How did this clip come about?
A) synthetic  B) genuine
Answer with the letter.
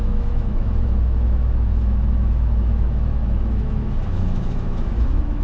A